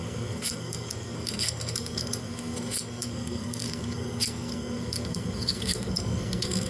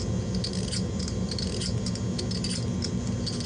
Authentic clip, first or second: second